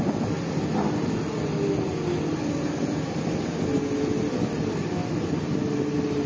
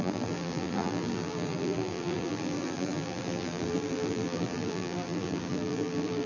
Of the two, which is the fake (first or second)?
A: second